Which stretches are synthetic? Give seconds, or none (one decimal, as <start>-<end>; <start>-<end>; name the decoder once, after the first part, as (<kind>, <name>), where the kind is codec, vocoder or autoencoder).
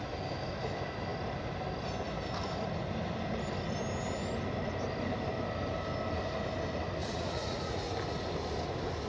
7.0-7.9 (vocoder, Vocos)